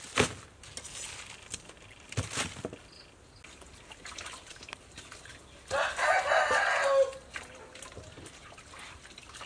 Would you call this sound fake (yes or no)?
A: no